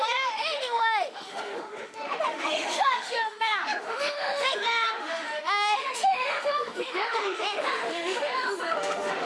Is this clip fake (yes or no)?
yes